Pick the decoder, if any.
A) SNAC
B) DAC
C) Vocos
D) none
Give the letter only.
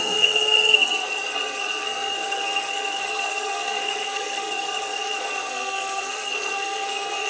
A